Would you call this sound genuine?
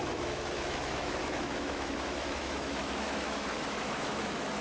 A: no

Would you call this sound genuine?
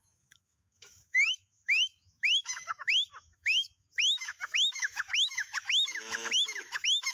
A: no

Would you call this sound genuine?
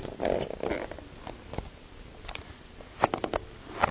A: yes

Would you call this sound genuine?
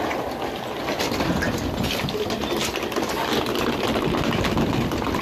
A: yes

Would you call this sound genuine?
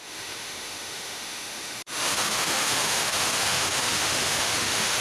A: no